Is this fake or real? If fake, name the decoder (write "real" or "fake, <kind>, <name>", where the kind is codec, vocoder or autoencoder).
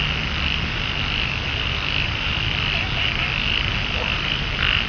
real